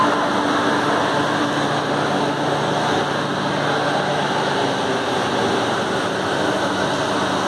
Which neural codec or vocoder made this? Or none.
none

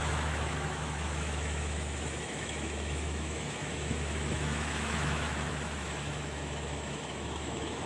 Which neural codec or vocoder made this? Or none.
autoencoder, DAC-VAE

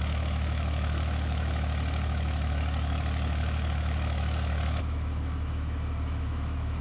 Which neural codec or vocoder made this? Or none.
autoencoder, DAC-VAE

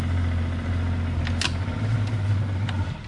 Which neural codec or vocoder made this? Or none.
none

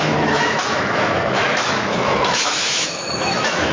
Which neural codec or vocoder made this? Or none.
autoencoder, DAC-VAE